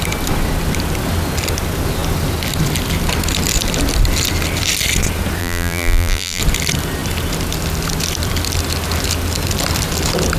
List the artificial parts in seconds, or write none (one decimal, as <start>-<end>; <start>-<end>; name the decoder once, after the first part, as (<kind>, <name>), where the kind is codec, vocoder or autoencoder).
5.4-6.4 (vocoder, BigVGAN v2)